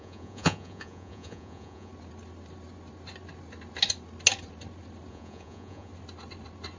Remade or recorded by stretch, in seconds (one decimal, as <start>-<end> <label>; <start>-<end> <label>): 0.0-1.9 remade; 1.9-5.1 recorded; 5.1-5.9 remade; 5.9-6.8 recorded